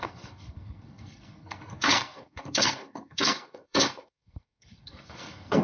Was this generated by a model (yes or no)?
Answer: yes